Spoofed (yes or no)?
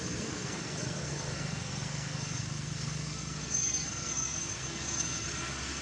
yes